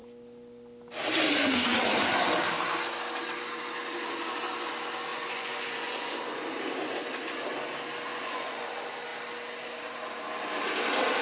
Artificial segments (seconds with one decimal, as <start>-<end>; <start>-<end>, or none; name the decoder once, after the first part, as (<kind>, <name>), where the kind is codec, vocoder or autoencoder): 5.1-6.2 (vocoder, Vocos); 8.1-8.7